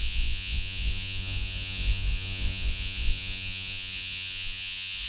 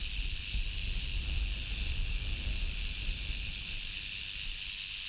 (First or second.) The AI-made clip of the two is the first